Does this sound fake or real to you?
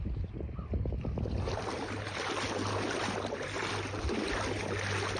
real